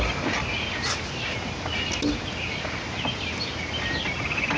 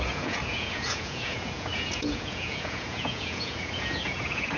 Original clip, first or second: first